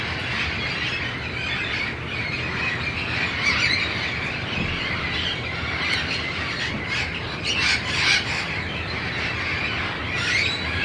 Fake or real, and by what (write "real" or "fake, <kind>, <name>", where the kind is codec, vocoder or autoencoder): real